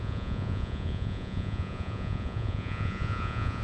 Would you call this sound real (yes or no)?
no